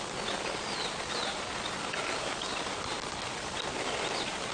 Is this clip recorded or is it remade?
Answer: recorded